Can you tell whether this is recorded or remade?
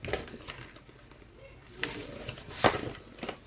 recorded